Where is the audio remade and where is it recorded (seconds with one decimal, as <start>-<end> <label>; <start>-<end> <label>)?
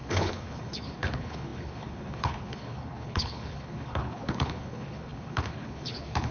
0.0-6.3 remade